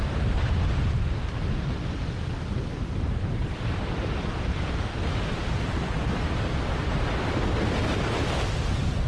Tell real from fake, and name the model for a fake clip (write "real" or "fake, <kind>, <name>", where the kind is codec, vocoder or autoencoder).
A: fake, vocoder, BigVGAN v2